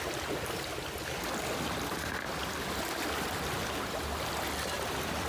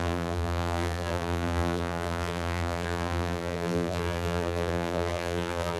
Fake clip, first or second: second